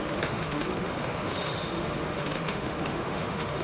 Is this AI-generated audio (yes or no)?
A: yes